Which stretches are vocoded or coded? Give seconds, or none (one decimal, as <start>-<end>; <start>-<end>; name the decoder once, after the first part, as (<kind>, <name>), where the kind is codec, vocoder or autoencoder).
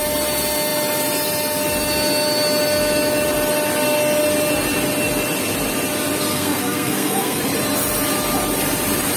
6.3-7.4 (codec, SNAC)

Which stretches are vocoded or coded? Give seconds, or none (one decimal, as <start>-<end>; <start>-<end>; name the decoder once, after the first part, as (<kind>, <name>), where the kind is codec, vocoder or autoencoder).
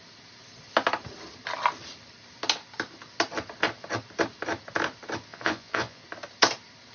5.3-6.0 (vocoder, Vocos)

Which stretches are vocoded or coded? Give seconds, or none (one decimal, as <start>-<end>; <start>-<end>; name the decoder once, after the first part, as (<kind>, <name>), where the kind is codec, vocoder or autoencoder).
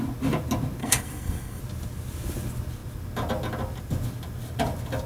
0.8-1.6 (codec, SNAC)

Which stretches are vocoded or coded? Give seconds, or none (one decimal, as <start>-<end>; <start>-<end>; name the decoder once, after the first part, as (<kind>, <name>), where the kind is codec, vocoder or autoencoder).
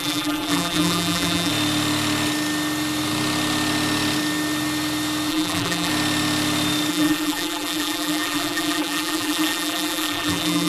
0.0-1.5 (vocoder, BigVGAN v2); 5.3-5.9; 6.9-10.7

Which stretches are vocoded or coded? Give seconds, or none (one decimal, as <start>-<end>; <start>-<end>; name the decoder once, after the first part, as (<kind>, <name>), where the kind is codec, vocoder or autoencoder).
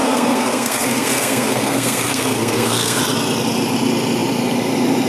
0.0-3.0 (codec, SNAC)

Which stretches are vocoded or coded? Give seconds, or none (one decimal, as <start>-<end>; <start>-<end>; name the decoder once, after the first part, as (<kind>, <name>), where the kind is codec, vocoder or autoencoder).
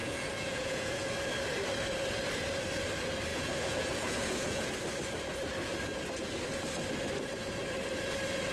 0.0-1.1 (vocoder, Vocos); 3.3-4.7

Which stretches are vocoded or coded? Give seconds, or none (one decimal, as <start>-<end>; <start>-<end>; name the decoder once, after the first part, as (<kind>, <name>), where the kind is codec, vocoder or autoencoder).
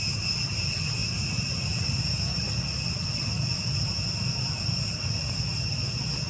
none